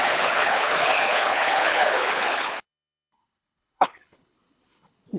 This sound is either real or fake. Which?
fake